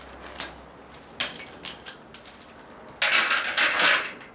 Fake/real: real